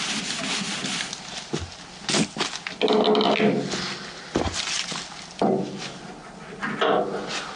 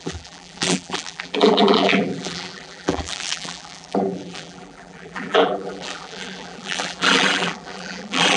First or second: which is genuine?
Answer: first